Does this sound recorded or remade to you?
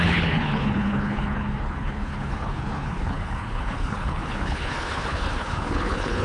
remade